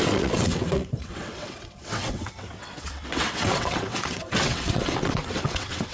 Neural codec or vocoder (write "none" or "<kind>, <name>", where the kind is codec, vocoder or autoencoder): vocoder, WaveNeXt